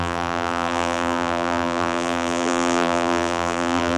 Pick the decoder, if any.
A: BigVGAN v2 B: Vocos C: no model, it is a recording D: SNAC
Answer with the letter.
A